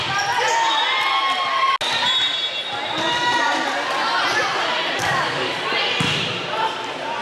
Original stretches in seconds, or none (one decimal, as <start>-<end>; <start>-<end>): 0.0-5.0; 5.6-7.2